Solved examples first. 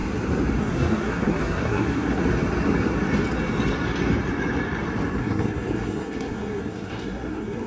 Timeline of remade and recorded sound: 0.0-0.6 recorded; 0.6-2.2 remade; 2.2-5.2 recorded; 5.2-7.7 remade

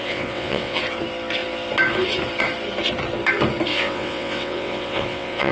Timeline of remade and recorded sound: 0.0-0.8 remade; 0.8-3.7 recorded; 3.7-5.5 remade

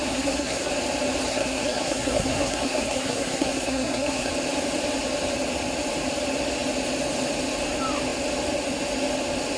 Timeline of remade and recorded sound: 0.0-0.7 remade; 0.7-1.3 recorded; 1.3-4.3 remade; 4.3-9.6 recorded

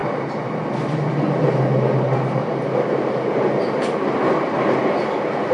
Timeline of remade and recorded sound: 0.0-5.5 recorded

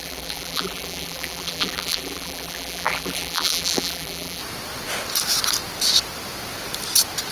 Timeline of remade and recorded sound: 0.0-4.4 remade; 4.4-7.3 recorded

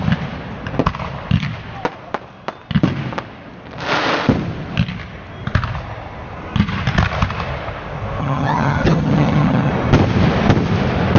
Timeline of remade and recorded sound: 0.0-8.2 recorded; 8.2-9.7 remade; 9.7-11.2 recorded

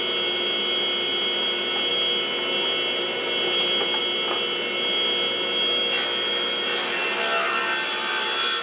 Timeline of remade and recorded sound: 0.0-8.6 recorded

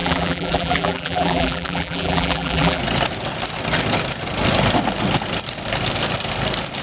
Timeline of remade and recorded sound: 0.0-2.8 remade; 2.8-6.8 recorded